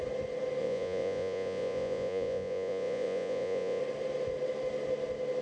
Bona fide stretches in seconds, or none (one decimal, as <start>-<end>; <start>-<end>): 0.0-0.6; 3.8-5.4